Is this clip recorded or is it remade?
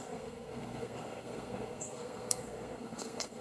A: remade